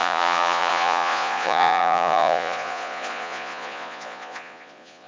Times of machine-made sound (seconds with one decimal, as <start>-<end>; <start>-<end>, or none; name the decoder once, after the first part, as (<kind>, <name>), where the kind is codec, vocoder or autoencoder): 0.0-5.1 (vocoder, Vocos)